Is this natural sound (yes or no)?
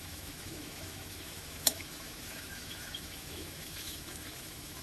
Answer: no